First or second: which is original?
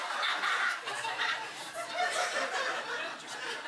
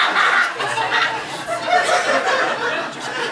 second